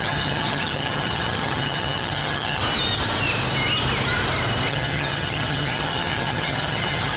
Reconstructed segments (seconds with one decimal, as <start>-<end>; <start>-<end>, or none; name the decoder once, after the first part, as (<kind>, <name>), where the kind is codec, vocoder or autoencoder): 0.0-2.6 (vocoder, HiFi-GAN); 4.7-7.2